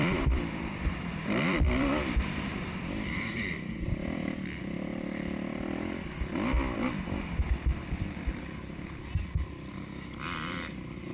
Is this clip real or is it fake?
fake